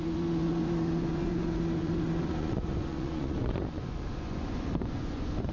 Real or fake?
fake